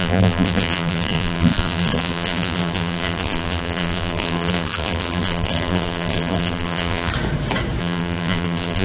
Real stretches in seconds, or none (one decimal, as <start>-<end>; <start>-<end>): 7.1-7.8